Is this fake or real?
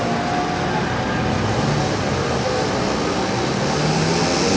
real